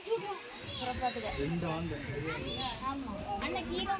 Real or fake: real